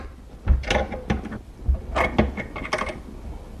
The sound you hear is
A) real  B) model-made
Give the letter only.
A